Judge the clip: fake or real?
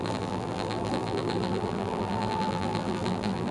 fake